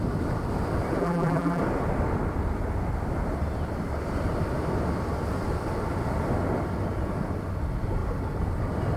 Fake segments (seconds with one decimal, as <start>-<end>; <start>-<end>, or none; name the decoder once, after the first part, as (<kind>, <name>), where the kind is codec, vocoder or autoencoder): 1.0-1.6 (vocoder, BigVGAN v2)